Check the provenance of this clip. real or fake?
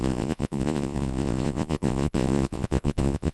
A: fake